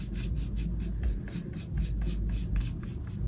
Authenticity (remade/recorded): recorded